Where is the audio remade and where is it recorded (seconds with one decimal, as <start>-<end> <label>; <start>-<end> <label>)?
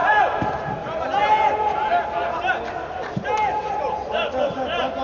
0.0-5.0 recorded